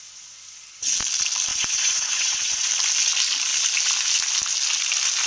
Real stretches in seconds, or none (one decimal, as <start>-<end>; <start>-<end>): 0.0-1.5; 2.7-5.3